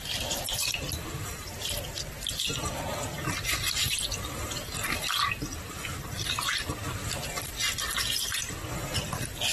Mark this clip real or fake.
fake